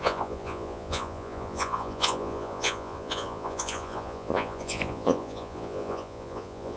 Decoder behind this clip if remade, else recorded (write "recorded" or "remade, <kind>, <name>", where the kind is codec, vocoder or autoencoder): remade, vocoder, Vocos